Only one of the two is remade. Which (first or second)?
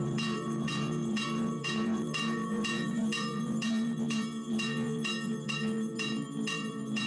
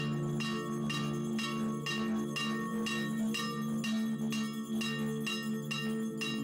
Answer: first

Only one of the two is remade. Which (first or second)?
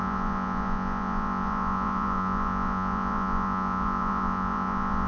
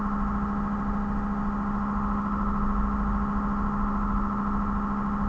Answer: first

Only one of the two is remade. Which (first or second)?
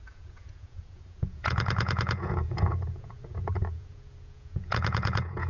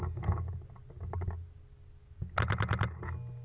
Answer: first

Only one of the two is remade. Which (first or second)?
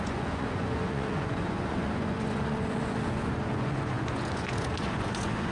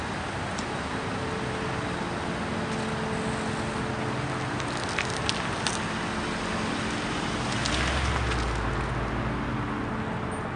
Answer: first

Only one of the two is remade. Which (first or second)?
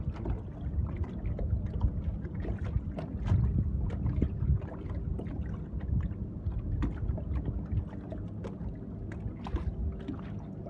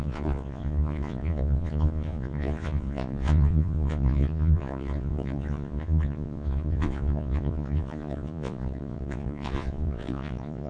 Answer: second